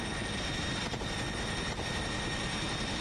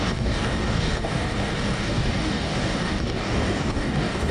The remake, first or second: second